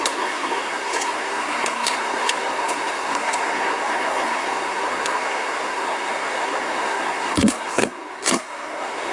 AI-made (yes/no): yes